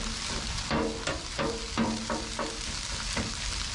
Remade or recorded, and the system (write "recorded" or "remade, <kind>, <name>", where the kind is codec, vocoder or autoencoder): recorded